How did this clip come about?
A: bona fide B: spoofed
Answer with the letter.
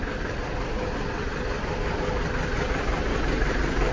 A